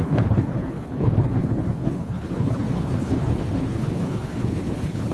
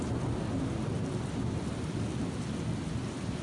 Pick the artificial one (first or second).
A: first